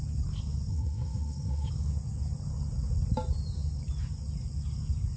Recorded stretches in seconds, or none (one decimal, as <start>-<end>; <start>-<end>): 0.0-0.7; 1.7-5.2